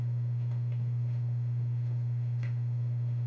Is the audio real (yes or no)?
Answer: no